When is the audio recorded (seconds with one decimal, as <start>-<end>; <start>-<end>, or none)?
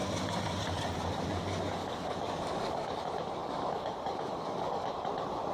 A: 0.0-1.8; 3.0-3.4; 4.9-5.5